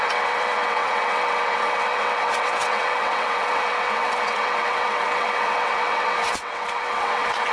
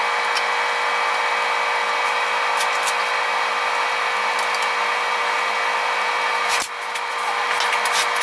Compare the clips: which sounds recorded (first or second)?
second